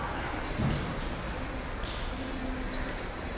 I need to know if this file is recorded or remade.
recorded